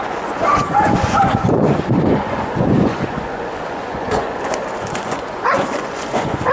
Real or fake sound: fake